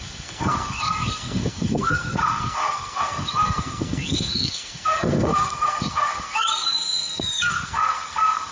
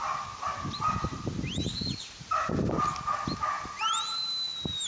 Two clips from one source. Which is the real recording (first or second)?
second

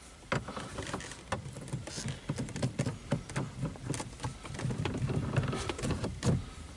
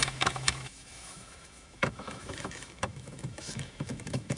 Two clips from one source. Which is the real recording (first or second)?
first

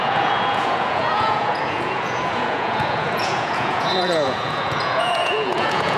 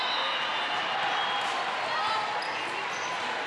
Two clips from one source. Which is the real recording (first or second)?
second